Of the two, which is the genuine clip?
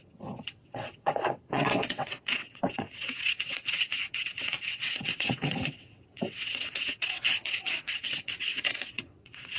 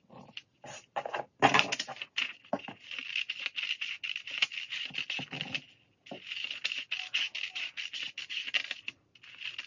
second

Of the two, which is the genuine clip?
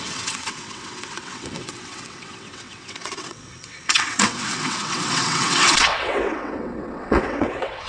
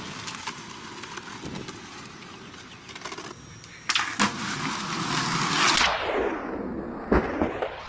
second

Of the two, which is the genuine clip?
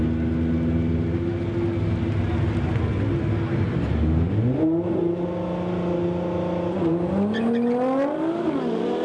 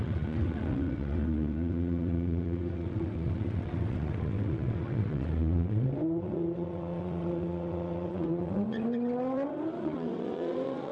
first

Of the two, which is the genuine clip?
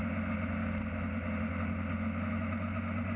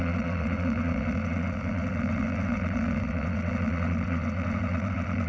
first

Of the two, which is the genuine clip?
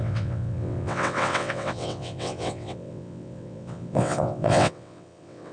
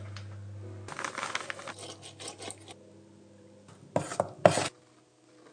second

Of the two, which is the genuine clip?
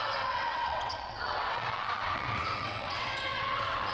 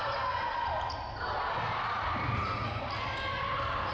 second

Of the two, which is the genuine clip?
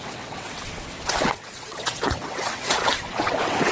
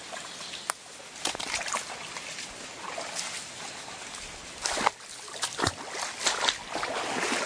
second